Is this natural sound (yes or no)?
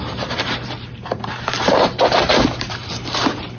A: no